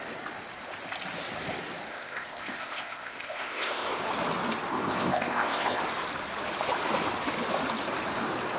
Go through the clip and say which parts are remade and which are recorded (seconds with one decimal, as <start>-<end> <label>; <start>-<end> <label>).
0.0-1.9 recorded; 1.9-4.0 remade; 4.0-4.7 recorded; 4.7-5.8 remade; 5.8-8.6 recorded